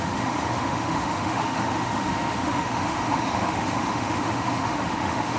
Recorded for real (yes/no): no